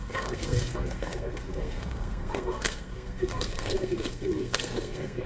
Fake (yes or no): yes